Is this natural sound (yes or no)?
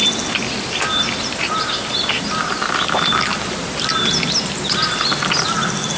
yes